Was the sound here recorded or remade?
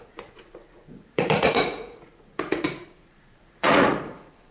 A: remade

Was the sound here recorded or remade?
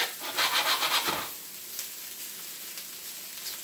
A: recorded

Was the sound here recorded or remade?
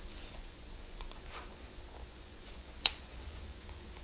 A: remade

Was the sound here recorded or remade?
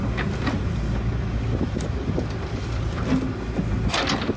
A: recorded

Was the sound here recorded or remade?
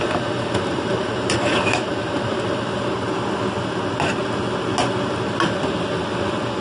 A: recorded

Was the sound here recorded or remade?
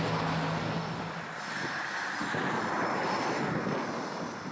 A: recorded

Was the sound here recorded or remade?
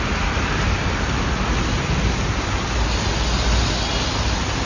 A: recorded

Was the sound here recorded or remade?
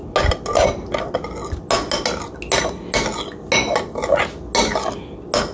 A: recorded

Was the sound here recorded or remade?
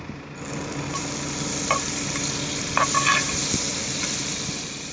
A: recorded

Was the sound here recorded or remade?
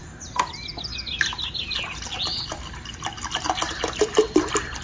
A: recorded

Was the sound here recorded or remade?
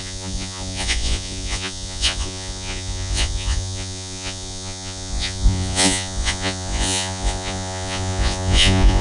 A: remade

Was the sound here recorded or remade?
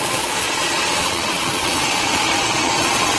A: remade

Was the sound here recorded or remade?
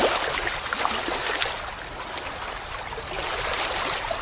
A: recorded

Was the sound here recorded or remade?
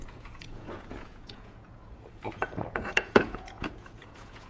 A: remade